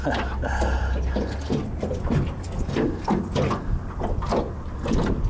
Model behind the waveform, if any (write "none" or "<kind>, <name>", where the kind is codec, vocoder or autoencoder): none